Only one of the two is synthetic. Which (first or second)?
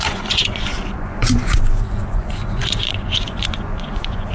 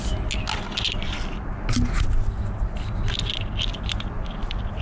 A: first